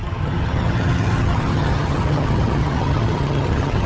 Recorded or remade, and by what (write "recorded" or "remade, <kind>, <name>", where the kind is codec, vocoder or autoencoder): remade, vocoder, HiFi-GAN